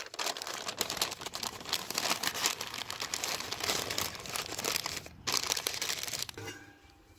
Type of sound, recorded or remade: recorded